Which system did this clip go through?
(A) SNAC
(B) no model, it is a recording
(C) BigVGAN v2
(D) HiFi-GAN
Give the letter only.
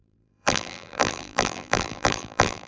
C